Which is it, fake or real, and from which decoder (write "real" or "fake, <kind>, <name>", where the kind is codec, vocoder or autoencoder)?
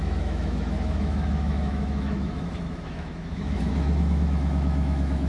fake, autoencoder, DAC-VAE